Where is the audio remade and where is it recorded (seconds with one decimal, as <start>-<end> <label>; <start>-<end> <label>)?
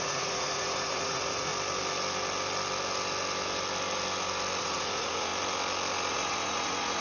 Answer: 0.0-1.5 remade; 1.5-4.6 recorded; 4.6-5.3 remade; 5.3-6.1 recorded; 6.1-7.0 remade